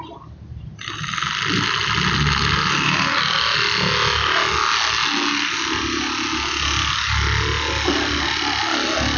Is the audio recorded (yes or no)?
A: yes